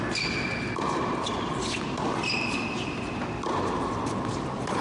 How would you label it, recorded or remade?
recorded